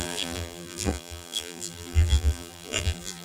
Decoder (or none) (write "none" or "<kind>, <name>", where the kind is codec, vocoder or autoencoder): vocoder, BigVGAN v2